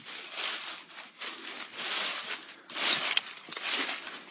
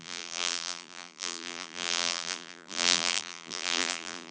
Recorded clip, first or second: first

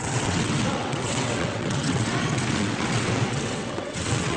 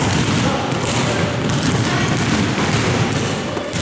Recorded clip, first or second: second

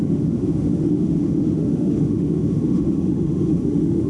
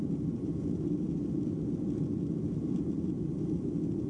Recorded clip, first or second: second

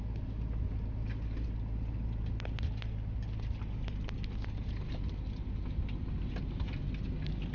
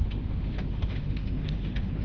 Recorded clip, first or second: first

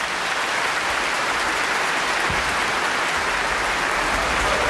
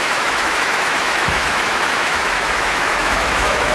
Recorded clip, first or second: first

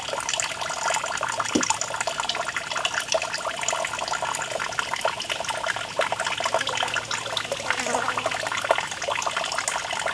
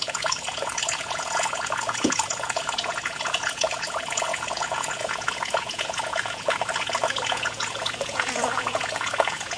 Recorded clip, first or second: first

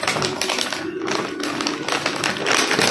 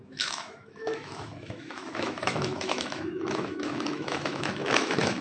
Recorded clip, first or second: first